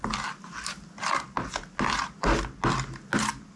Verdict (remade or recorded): recorded